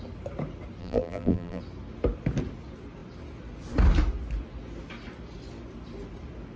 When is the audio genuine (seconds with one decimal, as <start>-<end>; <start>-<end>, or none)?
0.0-0.8; 1.6-6.6